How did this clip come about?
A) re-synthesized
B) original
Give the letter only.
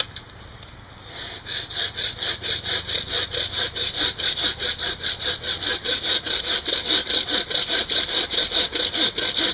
B